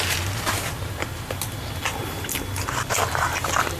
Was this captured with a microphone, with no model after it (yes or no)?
yes